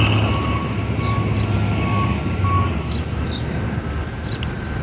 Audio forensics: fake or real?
real